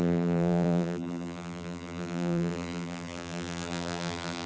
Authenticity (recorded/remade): remade